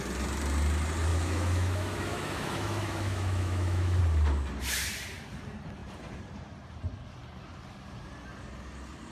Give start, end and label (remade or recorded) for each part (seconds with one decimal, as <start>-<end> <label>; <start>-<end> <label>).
0.0-1.1 recorded; 1.1-4.0 remade; 4.0-9.1 recorded